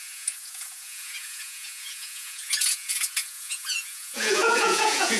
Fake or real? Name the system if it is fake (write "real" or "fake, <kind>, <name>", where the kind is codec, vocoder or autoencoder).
fake, vocoder, Vocos